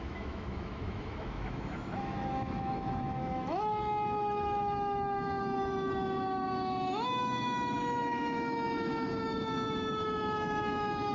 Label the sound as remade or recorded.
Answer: remade